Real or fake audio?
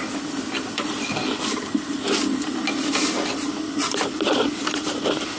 real